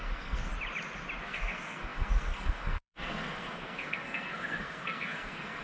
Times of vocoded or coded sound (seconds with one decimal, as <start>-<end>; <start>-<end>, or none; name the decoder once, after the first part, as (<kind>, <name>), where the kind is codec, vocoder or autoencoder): 0.0-0.5 (codec, SNAC); 1.2-5.6